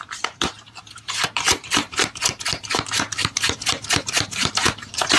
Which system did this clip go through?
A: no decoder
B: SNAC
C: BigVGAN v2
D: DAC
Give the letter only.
C